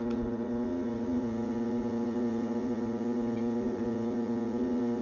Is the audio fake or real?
fake